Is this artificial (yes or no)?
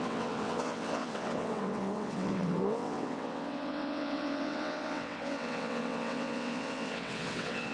yes